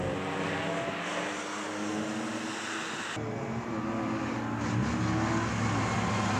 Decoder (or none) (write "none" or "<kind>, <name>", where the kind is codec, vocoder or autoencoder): none